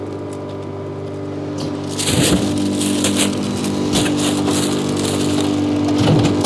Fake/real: real